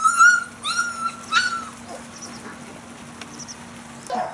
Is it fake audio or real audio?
real